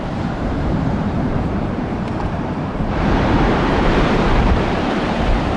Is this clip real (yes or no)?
no